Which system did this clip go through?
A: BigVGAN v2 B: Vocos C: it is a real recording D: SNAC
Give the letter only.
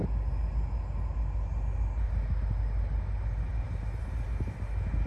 C